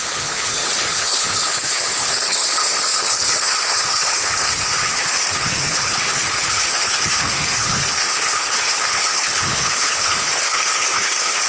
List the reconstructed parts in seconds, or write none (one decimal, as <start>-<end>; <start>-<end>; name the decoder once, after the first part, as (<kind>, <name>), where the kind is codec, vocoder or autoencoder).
0.0-11.5 (codec, HILCodec)